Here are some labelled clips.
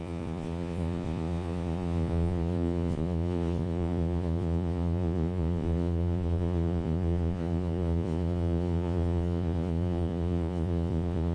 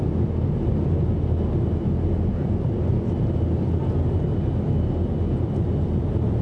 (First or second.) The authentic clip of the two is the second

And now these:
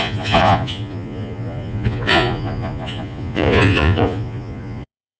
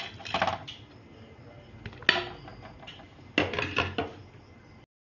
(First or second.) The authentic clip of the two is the second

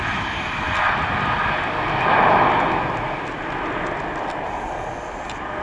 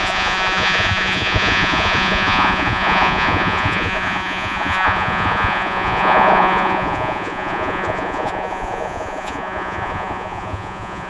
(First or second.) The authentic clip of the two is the first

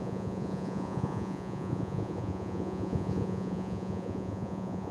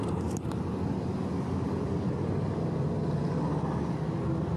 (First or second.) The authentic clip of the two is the second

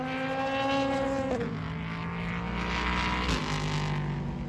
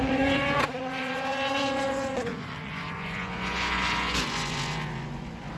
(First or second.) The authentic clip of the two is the first